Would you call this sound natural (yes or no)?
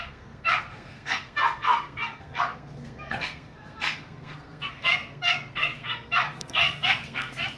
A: no